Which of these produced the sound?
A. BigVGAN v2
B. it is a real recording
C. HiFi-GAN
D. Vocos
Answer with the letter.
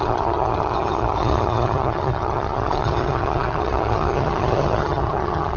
C